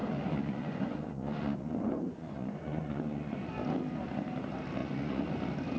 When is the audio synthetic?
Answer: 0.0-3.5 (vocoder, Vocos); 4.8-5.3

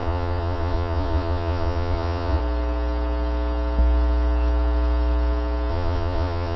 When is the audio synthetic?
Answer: 0.0-2.4 (vocoder, Vocos); 5.7-6.6

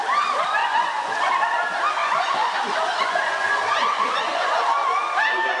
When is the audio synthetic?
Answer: 0.6-1.3 (vocoder, Vocos); 2.0-2.5; 3.0-4.6

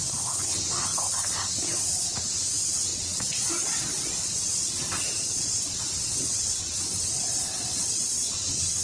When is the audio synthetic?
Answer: 2.9-8.0 (vocoder, Vocos)

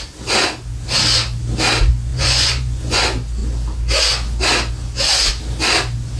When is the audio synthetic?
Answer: 2.1-3.0 (vocoder, Vocos)

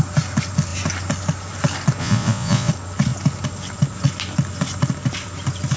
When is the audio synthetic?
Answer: 2.0-2.7 (vocoder, Vocos)

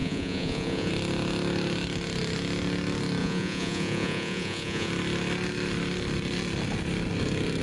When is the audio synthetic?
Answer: 0.0-0.9 (vocoder, Vocos); 3.2-4.9